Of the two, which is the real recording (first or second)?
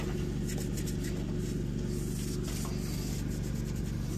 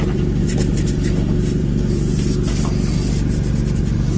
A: first